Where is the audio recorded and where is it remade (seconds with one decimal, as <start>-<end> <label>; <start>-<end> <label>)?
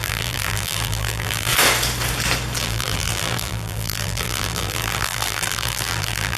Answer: 0.0-1.5 remade; 1.5-2.6 recorded; 2.6-6.4 remade